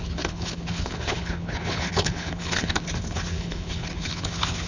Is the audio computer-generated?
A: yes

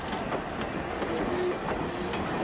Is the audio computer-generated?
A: no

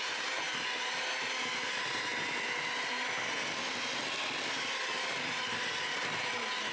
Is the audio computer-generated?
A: no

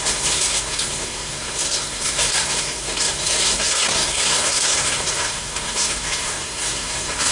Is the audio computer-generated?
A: yes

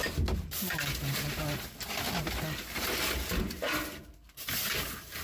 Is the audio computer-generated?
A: no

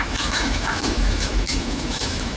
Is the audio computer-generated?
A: yes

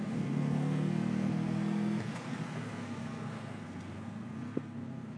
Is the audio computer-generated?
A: yes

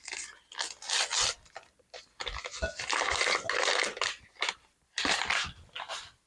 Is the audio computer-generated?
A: no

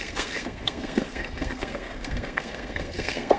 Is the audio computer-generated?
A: yes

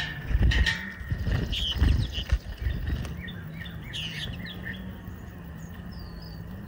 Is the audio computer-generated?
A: no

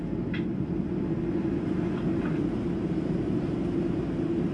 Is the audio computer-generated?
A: no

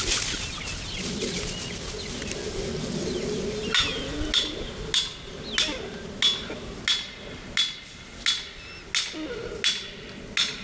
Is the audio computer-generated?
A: no